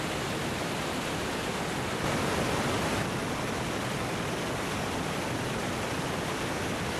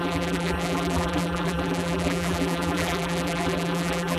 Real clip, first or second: first